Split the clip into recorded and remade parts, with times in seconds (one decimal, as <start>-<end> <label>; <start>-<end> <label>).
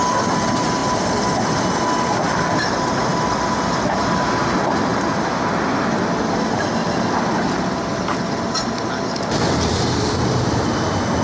0.0-0.8 recorded; 0.8-1.8 remade; 1.8-11.2 recorded